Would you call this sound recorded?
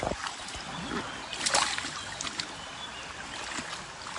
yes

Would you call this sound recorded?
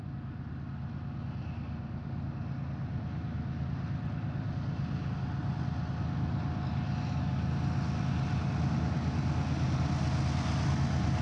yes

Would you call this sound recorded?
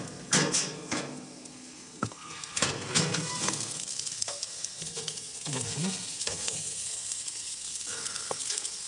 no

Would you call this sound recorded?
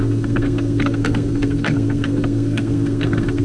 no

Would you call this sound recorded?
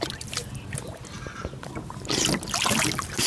yes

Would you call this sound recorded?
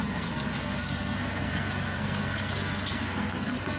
no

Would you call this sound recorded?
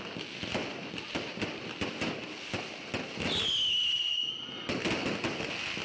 yes